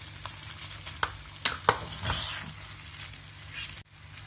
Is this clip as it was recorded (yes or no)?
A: yes